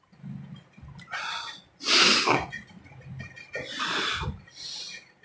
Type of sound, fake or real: real